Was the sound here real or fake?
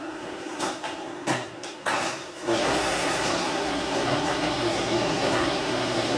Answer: fake